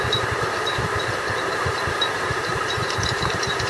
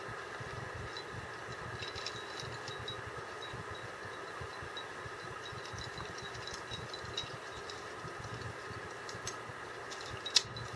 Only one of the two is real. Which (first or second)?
second